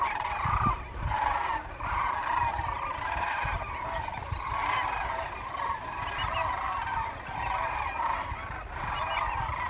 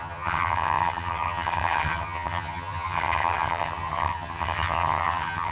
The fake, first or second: second